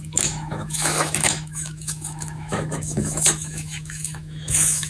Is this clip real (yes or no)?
no